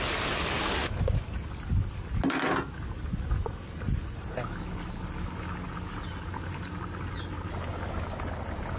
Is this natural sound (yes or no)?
yes